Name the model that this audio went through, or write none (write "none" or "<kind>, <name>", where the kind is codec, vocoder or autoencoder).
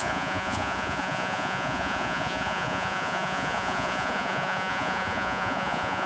vocoder, Vocos